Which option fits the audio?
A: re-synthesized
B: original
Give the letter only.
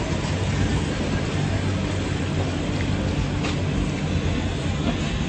B